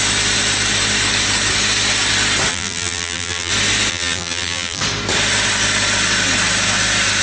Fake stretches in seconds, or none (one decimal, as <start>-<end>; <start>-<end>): 2.5-3.5; 3.9-4.8

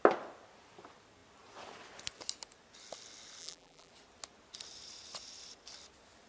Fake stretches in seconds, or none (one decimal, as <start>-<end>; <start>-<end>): 3.4-3.9

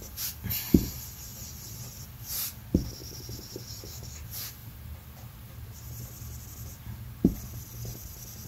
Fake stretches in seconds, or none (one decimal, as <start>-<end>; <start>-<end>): 1.3-2.3; 4.6-5.5

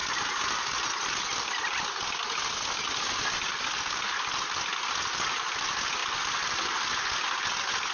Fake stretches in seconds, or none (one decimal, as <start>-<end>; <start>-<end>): none

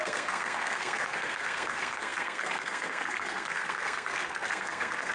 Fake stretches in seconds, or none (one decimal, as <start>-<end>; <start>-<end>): 0.0-5.1

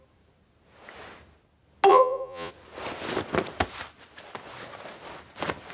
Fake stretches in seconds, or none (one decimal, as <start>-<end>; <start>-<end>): 1.9-2.5